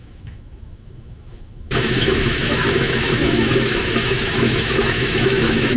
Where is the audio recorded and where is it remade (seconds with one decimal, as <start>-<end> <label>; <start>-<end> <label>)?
0.0-5.8 remade